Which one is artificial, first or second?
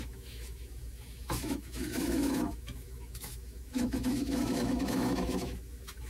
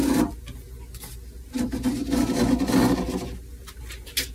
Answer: first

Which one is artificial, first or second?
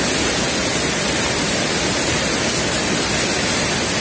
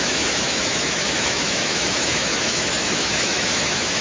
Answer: second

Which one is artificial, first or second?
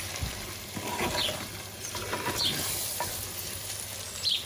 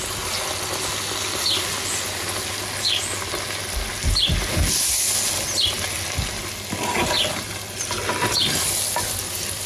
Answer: first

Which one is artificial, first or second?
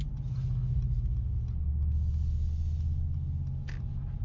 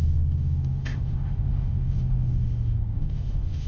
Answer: second